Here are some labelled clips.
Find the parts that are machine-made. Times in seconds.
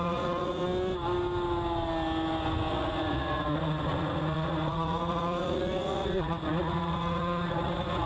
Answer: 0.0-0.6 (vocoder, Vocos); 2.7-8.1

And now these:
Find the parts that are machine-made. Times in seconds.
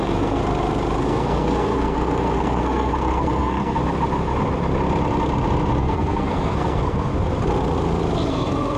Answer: 0.0-0.4 (codec, SNAC); 1.0-3.8; 5.8-7.1; 8.3-8.8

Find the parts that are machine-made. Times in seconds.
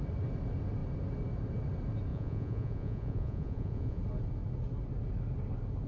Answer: 2.1-4.0 (vocoder, Vocos)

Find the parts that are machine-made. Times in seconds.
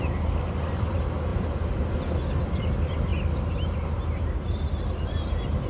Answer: none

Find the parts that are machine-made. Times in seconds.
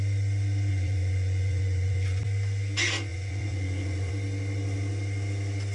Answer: 0.7-2.2 (vocoder, Vocos); 3.1-4.1